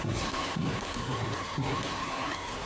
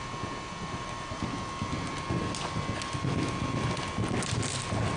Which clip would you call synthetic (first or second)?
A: first